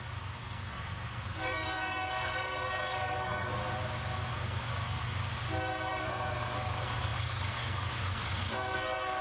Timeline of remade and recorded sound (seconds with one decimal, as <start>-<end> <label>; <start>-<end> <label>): 0.0-3.6 remade; 3.6-4.3 recorded; 4.3-5.3 remade; 5.3-5.9 recorded; 5.9-9.2 remade